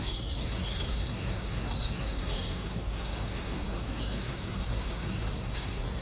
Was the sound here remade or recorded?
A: remade